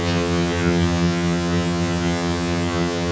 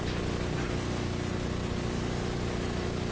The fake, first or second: first